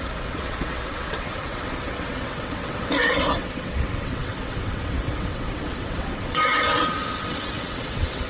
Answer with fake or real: fake